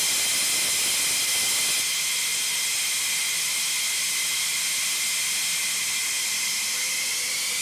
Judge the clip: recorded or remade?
recorded